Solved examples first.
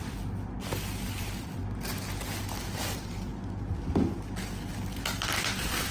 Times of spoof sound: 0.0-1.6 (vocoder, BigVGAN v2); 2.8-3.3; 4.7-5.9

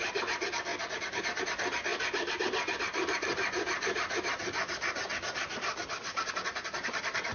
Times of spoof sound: 1.9-6.3 (vocoder, BigVGAN v2)

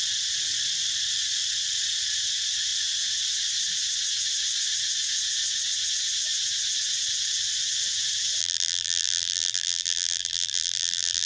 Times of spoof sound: 8.4-11.3 (vocoder, BigVGAN v2)

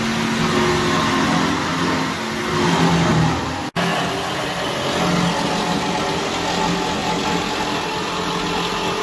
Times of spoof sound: 3.1-3.6 (vocoder, BigVGAN v2); 7.0-7.9